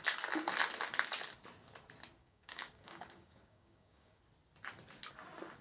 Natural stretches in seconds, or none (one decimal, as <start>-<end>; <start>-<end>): 0.0-2.2; 4.2-5.6